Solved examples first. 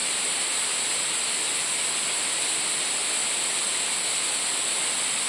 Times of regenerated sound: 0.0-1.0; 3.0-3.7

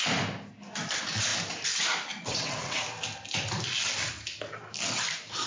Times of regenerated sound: 2.3-2.8

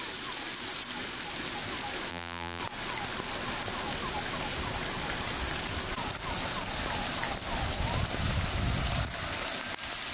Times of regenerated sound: 2.1-2.6

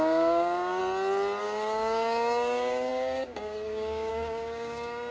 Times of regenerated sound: 0.0-0.8; 1.4-5.1

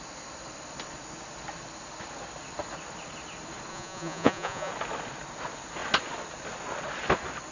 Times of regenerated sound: 3.7-4.7